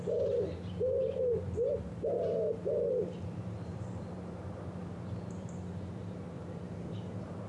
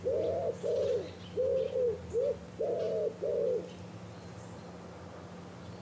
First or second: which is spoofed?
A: first